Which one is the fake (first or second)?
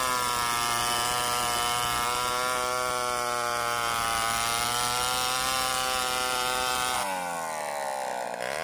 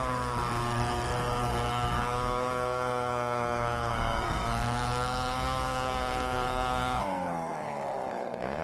second